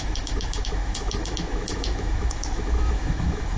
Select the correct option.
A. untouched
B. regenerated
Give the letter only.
B